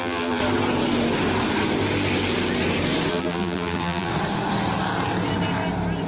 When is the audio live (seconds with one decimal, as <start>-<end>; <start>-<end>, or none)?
0.4-3.1; 4.1-6.1

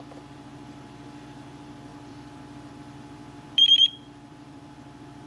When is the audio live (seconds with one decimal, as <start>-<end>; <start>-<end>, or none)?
0.0-1.9

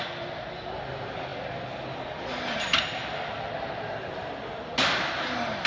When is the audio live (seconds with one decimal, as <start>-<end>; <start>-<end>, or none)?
0.0-5.7

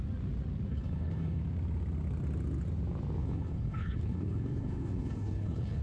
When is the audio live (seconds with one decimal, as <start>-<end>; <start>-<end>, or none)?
0.0-0.7; 1.4-3.2

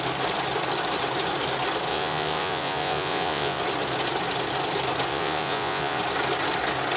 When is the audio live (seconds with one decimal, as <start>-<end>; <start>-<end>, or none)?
0.0-1.9; 3.6-5.1; 6.0-7.0

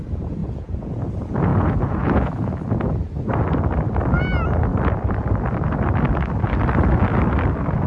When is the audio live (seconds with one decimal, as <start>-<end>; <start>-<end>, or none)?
0.0-0.4; 0.9-1.5; 2.5-7.9